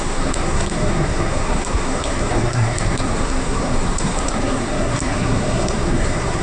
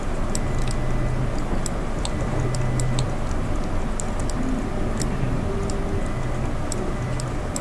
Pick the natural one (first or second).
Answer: second